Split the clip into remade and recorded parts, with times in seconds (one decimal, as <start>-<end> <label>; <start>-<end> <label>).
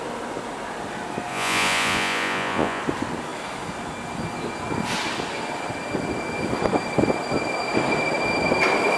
0.0-1.3 recorded; 1.3-2.8 remade; 2.8-9.0 recorded